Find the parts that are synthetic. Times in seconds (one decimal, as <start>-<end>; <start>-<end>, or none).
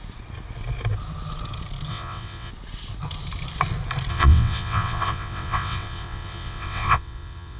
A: 1.9-2.5; 4.1-7.6